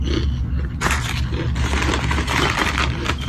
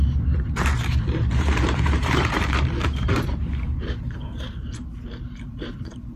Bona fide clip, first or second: first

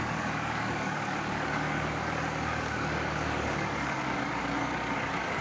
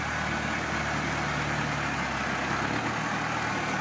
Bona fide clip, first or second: second